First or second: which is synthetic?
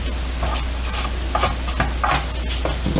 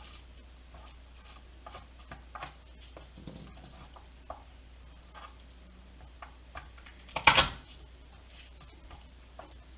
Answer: second